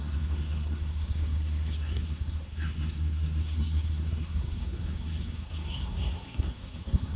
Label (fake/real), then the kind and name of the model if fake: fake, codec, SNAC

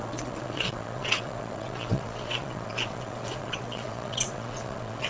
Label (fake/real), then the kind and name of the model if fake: fake, vocoder, WaveNeXt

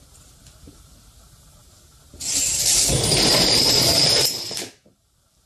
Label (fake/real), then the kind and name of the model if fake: fake, vocoder, BigVGAN v2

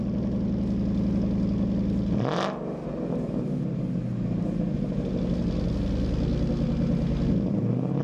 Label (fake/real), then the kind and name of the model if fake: real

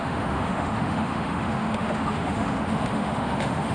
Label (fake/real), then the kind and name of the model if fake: fake, autoencoder, DAC-VAE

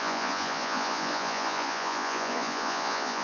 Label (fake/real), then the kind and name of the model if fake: fake, vocoder, Vocos